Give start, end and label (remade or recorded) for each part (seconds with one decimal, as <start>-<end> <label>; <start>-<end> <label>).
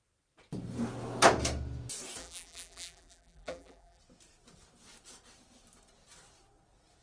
0.0-2.2 recorded; 2.2-4.0 remade; 4.0-7.0 recorded